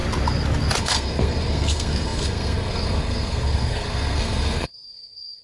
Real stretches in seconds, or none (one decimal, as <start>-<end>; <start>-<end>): 0.0-0.8